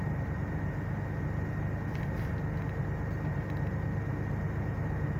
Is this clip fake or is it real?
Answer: real